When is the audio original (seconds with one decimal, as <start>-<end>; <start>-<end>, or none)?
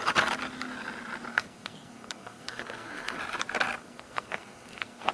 0.0-1.3; 3.2-3.8